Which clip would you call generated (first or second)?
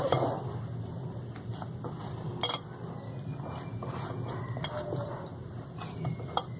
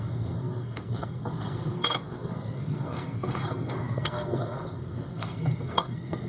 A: second